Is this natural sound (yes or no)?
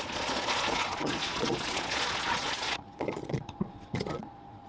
no